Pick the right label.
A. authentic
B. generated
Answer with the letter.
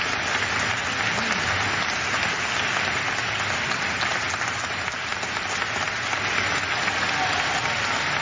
A